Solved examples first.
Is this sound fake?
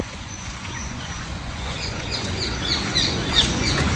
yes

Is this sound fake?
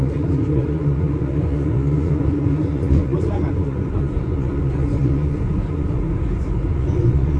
yes